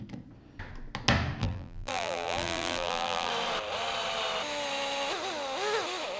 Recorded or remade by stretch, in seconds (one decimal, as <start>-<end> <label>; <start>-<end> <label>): 0.0-1.4 recorded; 1.4-3.3 remade; 3.3-6.2 recorded